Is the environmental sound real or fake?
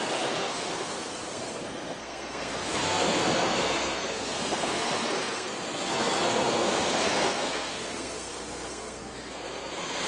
fake